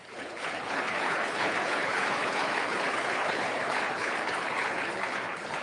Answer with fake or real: fake